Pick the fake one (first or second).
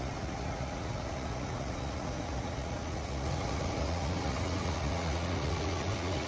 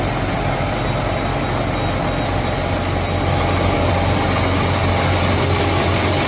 first